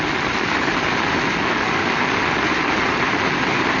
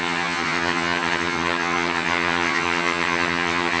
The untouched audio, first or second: first